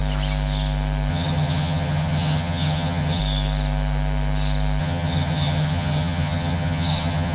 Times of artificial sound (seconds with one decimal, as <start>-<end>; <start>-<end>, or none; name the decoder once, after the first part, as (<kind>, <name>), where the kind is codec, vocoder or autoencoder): 1.1-3.2 (vocoder, HiFi-GAN); 4.8-7.3